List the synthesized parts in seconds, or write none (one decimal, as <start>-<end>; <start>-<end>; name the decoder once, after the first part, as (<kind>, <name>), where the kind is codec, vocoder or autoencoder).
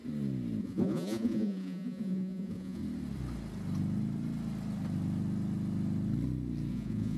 0.6-2.8 (vocoder, Vocos); 6.7-7.2